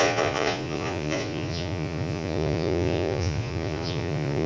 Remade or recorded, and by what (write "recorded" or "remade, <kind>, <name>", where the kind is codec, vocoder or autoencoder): remade, vocoder, Vocos